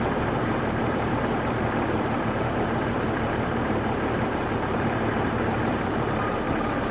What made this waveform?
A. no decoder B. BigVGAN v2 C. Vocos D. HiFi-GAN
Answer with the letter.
B